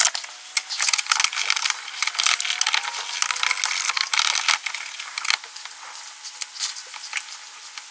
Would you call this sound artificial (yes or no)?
no